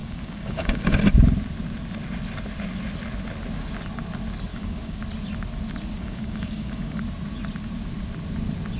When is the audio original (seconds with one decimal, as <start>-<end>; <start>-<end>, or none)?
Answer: 1.0-4.5; 5.0-6.0; 7.0-8.8